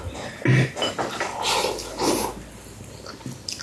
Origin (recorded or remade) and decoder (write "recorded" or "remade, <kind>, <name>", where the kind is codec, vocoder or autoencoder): recorded